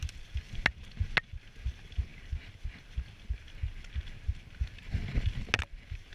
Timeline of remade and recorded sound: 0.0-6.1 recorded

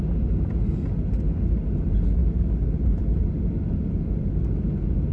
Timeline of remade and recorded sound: 0.0-5.1 recorded

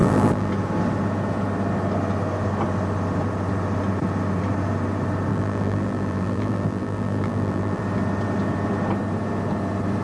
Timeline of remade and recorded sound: 0.0-0.5 remade; 0.5-5.3 recorded; 5.3-7.8 remade; 7.8-10.0 recorded

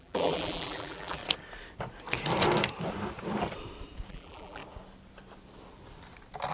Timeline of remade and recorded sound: 0.0-1.2 remade; 1.2-4.1 recorded; 4.1-4.6 remade; 4.6-6.5 recorded

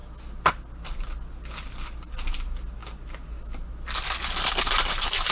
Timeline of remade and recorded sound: 0.0-5.3 recorded

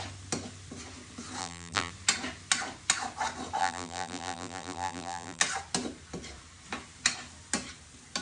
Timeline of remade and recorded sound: 0.0-1.4 recorded; 1.4-1.9 remade; 1.9-3.6 recorded; 3.6-5.4 remade; 5.4-8.2 recorded